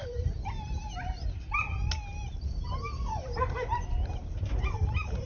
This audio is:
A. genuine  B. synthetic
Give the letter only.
A